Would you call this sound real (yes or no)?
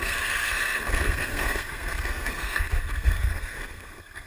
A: no